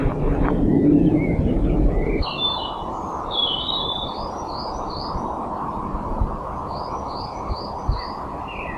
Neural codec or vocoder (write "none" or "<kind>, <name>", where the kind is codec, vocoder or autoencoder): none